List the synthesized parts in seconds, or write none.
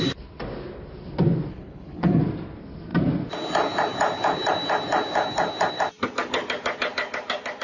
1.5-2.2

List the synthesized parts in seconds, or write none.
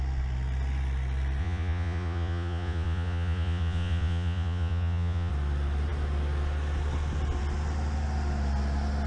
1.4-5.3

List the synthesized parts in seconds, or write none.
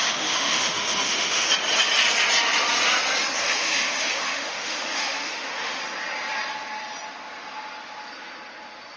0.0-1.5; 3.4-5.8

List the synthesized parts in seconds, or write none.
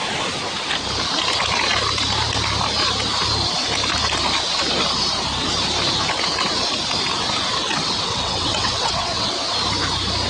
7.6-9.3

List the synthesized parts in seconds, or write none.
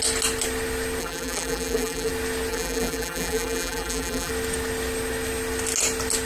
1.0-2.1; 2.5-4.3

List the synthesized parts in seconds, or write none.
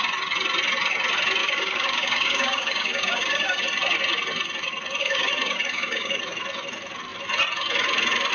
1.4-3.6; 5.0-6.2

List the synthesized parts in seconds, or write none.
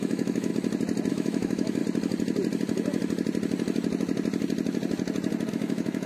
0.0-0.5; 1.1-1.8; 5.5-6.1